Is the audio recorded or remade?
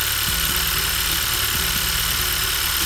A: recorded